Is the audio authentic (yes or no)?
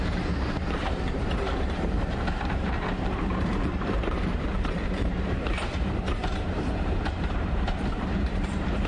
no